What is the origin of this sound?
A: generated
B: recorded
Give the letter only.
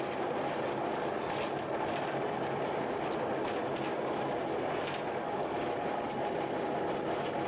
B